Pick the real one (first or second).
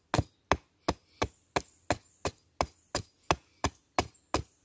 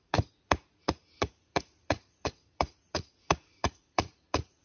first